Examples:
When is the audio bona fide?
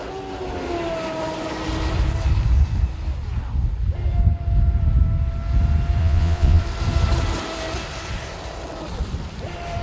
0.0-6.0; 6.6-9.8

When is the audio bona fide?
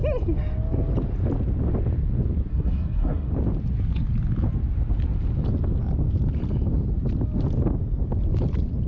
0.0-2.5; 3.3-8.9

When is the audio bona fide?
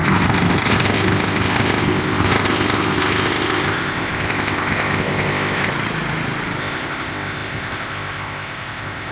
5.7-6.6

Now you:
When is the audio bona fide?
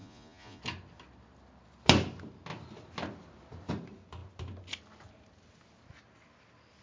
0.6-6.8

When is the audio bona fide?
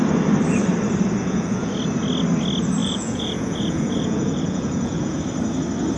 0.0-1.2; 1.7-2.8; 5.2-6.0